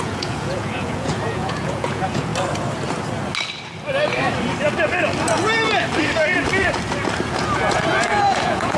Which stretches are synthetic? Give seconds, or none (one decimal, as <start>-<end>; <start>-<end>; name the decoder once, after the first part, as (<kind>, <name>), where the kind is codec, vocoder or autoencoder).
0.0-2.3 (vocoder, Vocos); 7.3-8.8